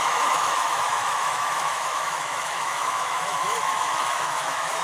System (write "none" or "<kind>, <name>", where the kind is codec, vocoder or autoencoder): autoencoder, DAC-VAE